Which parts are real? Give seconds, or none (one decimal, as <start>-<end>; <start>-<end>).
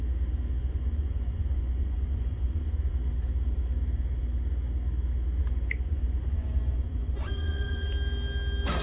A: 0.0-0.6; 2.9-5.4; 7.9-8.8